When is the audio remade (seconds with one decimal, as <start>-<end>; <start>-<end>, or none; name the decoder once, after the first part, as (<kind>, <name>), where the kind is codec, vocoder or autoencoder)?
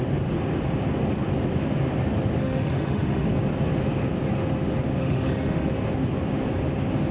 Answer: 2.4-3.3 (autoencoder, DAC-VAE); 5.0-5.7